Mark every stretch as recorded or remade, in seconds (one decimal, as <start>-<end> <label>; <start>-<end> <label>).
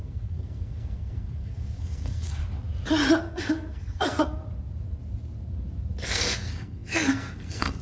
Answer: 0.0-2.4 remade; 2.4-3.2 recorded; 3.2-4.4 remade; 4.4-6.1 recorded; 6.1-7.8 remade